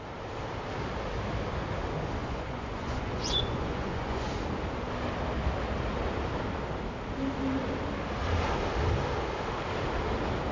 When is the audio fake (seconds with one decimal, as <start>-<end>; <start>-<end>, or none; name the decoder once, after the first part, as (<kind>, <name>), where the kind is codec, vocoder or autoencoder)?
2.2-4.3 (vocoder, Vocos)